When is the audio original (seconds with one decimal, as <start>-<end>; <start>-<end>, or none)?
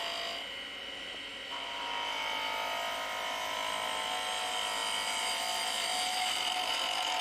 0.0-7.2